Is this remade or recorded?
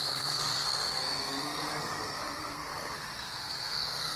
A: remade